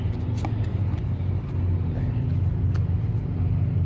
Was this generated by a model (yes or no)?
no